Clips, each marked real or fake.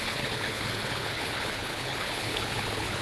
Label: fake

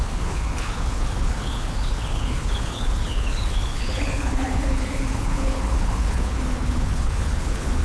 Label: fake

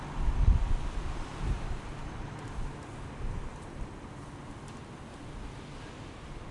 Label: real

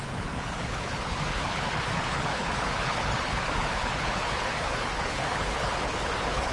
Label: fake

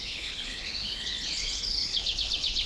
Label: fake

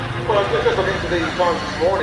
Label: real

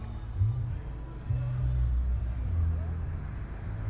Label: real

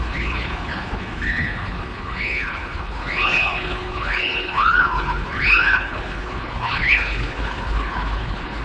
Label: fake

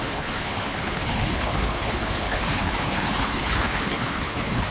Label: fake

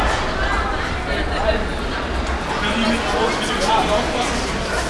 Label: real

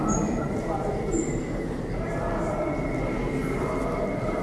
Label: real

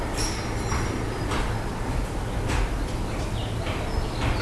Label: real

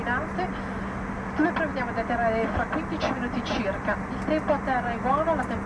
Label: real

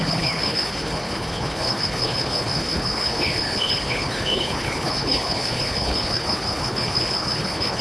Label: fake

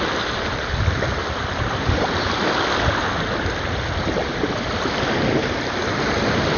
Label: real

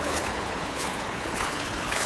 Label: fake